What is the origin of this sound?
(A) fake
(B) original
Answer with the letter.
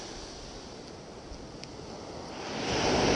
B